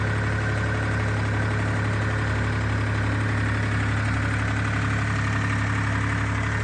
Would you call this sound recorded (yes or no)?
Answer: yes